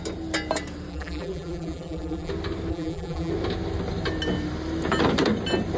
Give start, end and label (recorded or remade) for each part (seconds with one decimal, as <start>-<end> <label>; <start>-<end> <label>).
0.0-0.9 recorded; 0.9-2.3 remade; 2.3-2.7 recorded; 2.7-3.3 remade; 3.3-5.8 recorded